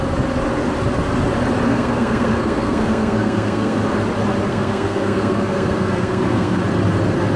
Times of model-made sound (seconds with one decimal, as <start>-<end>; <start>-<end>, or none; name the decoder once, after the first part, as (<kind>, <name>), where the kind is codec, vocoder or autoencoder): 1.7-3.8 (codec, SNAC); 4.5-6.6